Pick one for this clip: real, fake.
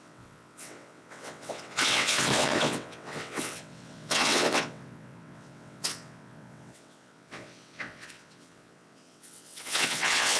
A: fake